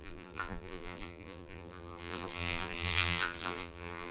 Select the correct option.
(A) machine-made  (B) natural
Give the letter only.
A